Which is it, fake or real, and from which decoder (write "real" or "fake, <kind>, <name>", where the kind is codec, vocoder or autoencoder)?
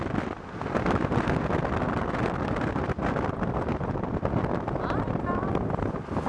real